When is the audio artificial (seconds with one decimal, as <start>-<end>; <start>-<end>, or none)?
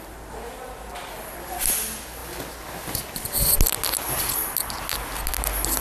none